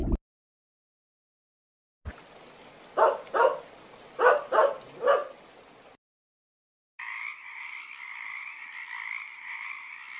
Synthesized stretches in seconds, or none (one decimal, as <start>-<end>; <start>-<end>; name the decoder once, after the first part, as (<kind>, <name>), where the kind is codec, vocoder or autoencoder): none